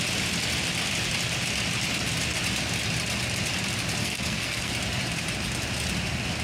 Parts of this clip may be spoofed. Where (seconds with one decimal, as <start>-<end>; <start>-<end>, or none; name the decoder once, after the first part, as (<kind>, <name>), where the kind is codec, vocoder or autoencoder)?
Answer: 4.0-4.7 (codec, SNAC)